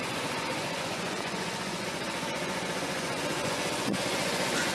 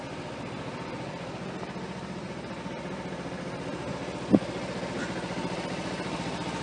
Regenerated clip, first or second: first